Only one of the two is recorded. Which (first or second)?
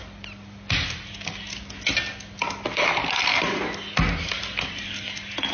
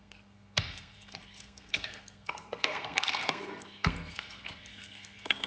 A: first